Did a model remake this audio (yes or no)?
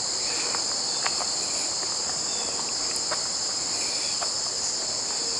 no